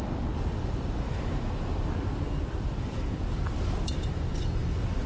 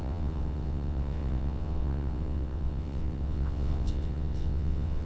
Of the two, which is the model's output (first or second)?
second